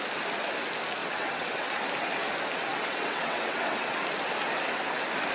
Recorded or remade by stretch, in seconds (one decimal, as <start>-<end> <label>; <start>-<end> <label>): 0.0-1.0 recorded; 1.0-1.7 remade; 1.7-2.7 recorded; 2.7-4.0 remade; 4.0-5.3 recorded